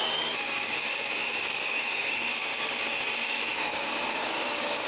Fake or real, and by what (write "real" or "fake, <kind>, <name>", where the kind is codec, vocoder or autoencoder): fake, codec, DAC